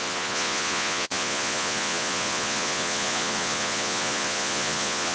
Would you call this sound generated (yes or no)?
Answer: yes